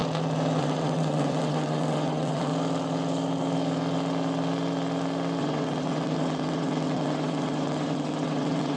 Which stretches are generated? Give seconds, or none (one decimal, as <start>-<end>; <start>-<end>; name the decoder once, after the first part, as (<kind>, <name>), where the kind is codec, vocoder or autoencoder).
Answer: 0.6-2.5 (vocoder, WaveNeXt); 5.4-8.8